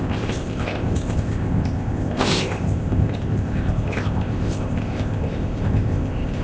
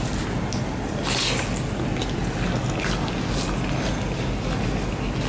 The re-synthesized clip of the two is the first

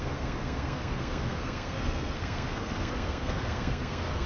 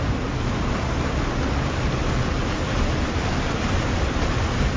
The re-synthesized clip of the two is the first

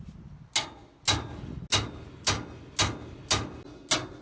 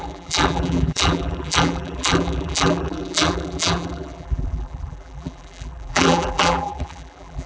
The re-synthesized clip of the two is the second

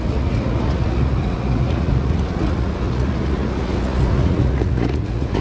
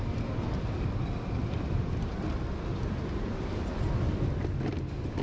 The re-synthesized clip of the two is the first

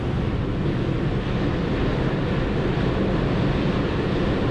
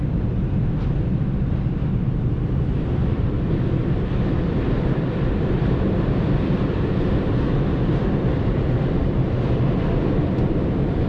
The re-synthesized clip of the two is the second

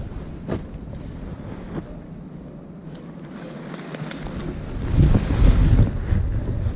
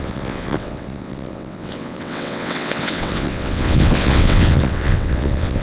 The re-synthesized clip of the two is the second